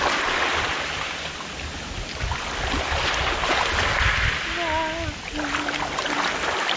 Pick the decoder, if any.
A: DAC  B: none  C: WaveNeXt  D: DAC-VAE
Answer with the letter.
B